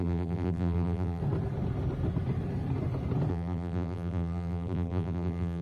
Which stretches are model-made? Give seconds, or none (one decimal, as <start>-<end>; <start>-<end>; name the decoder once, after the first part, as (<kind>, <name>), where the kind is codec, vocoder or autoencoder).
0.0-1.2 (vocoder, BigVGAN v2); 3.3-5.6